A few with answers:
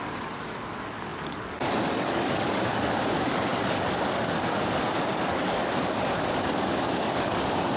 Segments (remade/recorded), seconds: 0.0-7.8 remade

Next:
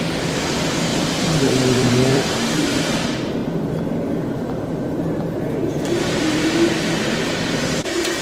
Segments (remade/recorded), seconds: 0.0-0.9 recorded; 0.9-2.2 remade; 2.2-7.3 recorded; 7.3-8.2 remade

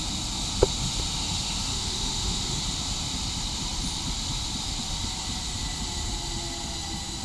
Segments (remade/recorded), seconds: 0.0-1.7 recorded; 1.7-2.6 remade; 2.6-7.2 recorded

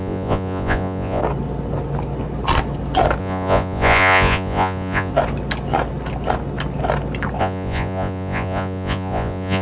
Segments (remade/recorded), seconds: 0.0-1.2 remade; 1.2-3.2 recorded; 3.2-5.1 remade; 5.1-7.4 recorded; 7.4-9.6 remade

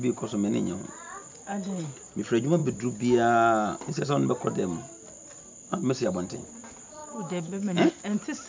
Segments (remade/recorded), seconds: 0.0-7.0 recorded; 7.0-7.9 remade; 7.9-8.5 recorded

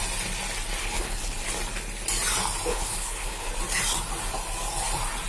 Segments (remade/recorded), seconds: 0.0-0.8 recorded; 0.8-1.4 remade; 1.4-2.7 recorded; 2.7-3.5 remade; 3.5-5.3 recorded

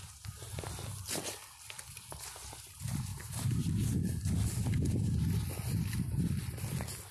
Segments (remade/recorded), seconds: 0.0-0.5 remade; 0.5-3.1 recorded; 3.1-3.7 remade; 3.7-7.1 recorded

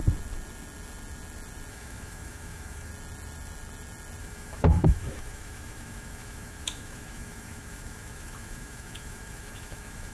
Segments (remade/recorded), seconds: 0.0-1.7 recorded; 1.7-2.9 remade; 2.9-4.2 recorded; 4.2-10.1 remade